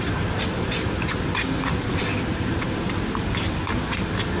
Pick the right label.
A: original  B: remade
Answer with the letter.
A